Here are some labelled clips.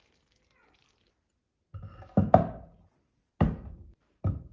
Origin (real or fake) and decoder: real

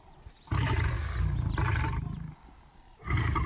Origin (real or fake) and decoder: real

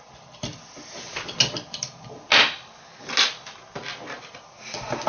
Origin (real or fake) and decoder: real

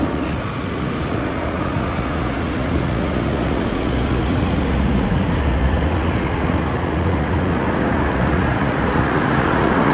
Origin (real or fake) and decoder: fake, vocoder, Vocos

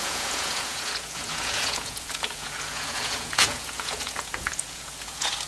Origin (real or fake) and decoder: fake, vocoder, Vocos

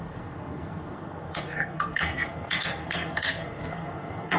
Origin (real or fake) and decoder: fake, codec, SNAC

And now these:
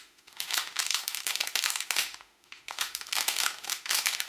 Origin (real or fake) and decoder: fake, autoencoder, DAC-VAE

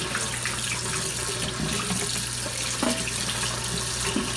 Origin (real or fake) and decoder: real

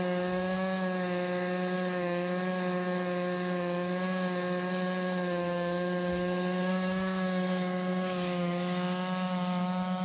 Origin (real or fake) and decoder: fake, autoencoder, DAC-VAE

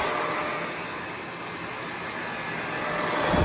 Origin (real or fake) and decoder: real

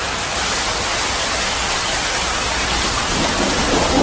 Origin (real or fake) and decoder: real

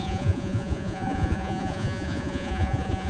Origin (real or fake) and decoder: fake, vocoder, Vocos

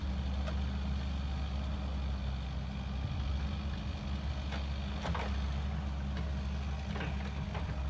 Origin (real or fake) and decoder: real